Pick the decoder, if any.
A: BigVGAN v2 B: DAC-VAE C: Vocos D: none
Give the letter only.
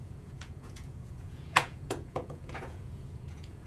C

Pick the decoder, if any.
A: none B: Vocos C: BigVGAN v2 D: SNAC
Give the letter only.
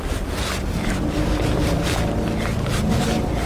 A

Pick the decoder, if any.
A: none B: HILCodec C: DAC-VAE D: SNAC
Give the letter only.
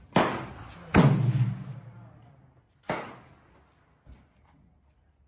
A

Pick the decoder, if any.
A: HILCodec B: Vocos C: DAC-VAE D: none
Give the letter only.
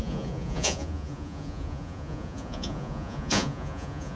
B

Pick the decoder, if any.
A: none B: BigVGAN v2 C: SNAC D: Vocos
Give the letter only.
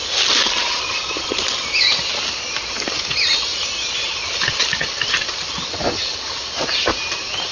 A